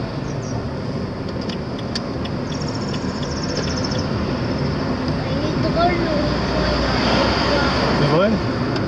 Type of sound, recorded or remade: recorded